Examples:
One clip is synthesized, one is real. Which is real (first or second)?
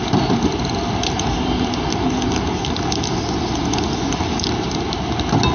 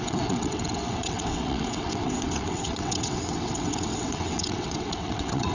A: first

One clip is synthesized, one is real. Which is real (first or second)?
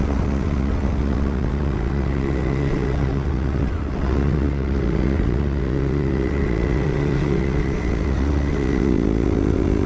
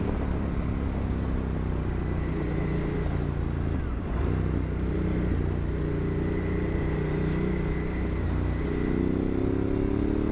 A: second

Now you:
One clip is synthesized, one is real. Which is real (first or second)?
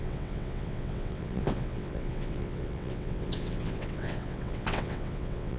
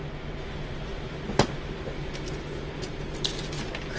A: second